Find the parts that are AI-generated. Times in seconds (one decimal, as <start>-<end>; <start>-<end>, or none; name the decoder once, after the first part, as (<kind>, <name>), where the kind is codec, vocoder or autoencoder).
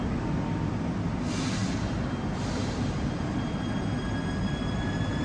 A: none